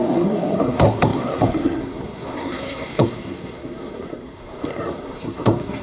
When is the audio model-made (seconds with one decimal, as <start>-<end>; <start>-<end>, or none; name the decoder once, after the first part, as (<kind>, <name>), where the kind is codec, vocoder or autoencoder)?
0.0-5.8 (codec, SNAC)